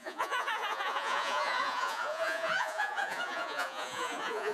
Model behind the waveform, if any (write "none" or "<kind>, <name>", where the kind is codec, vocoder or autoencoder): vocoder, Vocos